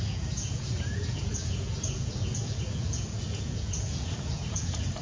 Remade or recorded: remade